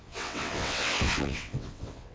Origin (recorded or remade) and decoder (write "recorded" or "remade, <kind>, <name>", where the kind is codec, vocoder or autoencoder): remade, vocoder, WaveNeXt